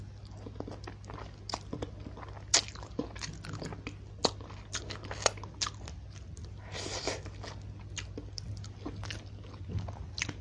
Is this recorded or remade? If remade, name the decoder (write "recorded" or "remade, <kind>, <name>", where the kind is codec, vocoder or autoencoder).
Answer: recorded